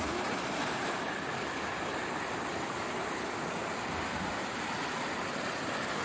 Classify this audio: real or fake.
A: real